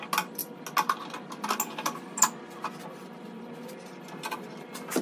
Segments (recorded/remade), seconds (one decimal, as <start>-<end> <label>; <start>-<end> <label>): 0.0-5.0 recorded